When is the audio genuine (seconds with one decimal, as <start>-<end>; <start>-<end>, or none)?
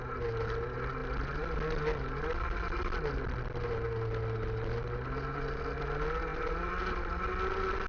0.0-7.9